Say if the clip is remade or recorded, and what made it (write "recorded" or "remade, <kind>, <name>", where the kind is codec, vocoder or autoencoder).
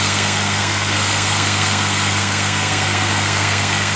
remade, codec, SNAC